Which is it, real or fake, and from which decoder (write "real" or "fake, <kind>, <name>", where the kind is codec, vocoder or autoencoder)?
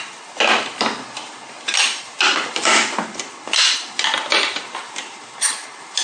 real